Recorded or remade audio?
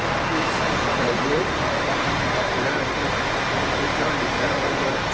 remade